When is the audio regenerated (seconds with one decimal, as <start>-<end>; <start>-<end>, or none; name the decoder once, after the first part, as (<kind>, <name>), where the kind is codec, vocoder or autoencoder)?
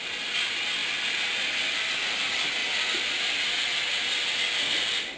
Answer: none